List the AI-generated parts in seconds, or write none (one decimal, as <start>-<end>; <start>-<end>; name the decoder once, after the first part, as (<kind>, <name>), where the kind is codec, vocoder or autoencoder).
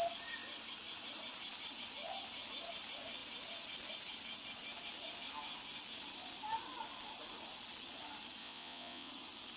8.4-9.1 (vocoder, Vocos)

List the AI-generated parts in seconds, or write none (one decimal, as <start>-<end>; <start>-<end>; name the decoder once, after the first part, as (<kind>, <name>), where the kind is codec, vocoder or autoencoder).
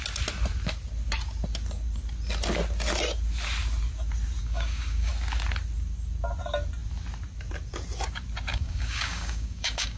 4.4-5.1 (codec, DAC); 8.5-10.0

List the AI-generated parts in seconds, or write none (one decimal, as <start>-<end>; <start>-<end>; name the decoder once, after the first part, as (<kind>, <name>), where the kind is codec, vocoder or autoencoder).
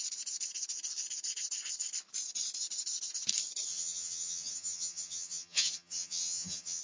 3.7-6.8 (vocoder, HiFi-GAN)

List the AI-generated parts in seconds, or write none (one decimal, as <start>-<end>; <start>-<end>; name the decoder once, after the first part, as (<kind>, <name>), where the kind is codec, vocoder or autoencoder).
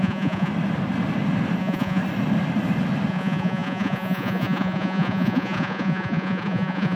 0.0-0.5 (vocoder, Vocos); 1.6-2.0; 3.1-7.0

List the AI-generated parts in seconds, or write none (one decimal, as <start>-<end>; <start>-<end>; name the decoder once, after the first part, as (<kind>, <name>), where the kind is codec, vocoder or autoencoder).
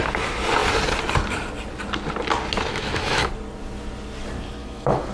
2.7-3.3 (autoencoder, DAC-VAE); 4.6-5.1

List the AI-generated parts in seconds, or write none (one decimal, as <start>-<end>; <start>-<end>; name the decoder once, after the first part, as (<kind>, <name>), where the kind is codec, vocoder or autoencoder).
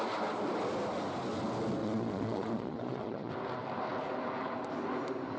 1.8-3.3 (vocoder, Vocos)